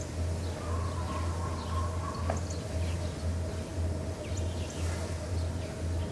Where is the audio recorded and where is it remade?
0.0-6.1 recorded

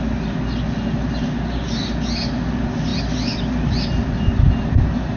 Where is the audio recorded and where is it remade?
0.0-5.2 recorded